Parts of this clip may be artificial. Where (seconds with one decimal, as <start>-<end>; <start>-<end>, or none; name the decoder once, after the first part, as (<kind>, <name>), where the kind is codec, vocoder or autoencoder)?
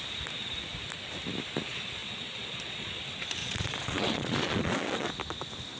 2.0-3.0 (vocoder, Vocos); 3.4-5.1